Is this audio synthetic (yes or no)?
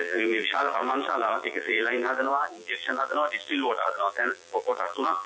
yes